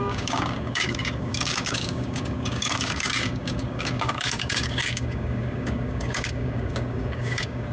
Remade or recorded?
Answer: remade